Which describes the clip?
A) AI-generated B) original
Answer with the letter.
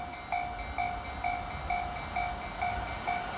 B